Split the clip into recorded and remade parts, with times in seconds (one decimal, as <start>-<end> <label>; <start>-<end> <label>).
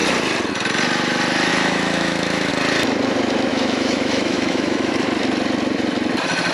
0.0-1.5 recorded; 1.5-2.5 remade; 2.5-3.5 recorded; 3.5-4.9 remade; 4.9-6.5 recorded